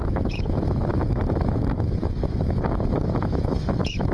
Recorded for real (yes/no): no